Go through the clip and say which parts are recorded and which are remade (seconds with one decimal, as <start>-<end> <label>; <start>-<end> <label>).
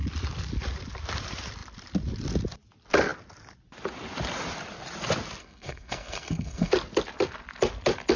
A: 0.0-5.4 recorded; 5.4-6.7 remade; 6.7-8.2 recorded